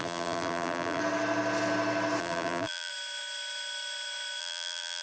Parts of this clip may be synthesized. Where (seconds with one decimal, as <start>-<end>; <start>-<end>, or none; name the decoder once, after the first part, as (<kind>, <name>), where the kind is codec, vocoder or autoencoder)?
0.0-1.0 (vocoder, BigVGAN v2); 2.2-2.9; 4.4-5.0